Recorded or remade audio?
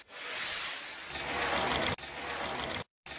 recorded